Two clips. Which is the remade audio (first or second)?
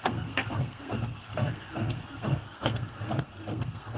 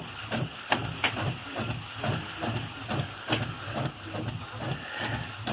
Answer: first